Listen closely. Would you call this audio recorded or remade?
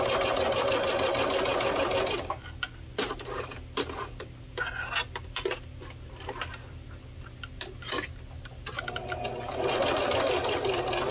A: recorded